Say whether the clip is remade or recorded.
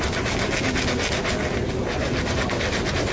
recorded